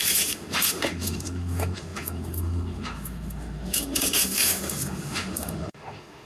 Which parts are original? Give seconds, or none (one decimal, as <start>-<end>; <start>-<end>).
none